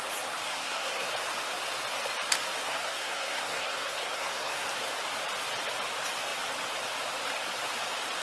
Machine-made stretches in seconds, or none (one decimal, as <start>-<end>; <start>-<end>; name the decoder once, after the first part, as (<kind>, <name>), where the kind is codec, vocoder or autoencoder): 0.5-1.1 (codec, SNAC); 2.7-4.7